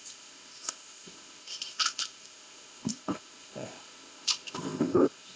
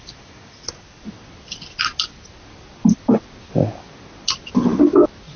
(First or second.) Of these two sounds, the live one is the second